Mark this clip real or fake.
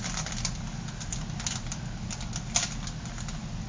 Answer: real